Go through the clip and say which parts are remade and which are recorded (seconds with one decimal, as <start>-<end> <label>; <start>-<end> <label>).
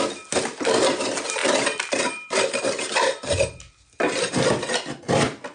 0.0-1.4 recorded; 1.4-4.7 remade; 4.7-5.5 recorded